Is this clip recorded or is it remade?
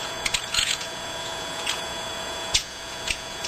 remade